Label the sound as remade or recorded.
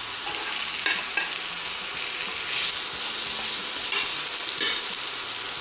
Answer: recorded